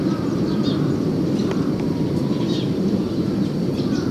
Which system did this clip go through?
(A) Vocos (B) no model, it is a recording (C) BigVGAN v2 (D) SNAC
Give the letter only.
C